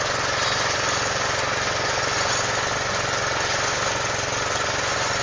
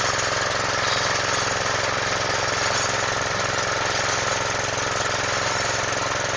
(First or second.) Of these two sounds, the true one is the second